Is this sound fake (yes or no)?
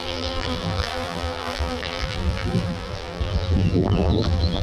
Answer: yes